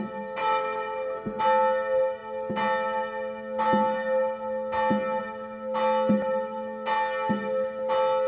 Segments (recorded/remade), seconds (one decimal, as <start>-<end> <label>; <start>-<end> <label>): 0.0-0.4 recorded; 0.4-1.4 remade; 1.4-8.3 recorded